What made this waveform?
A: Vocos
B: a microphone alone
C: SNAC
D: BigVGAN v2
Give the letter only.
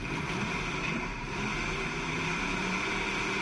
D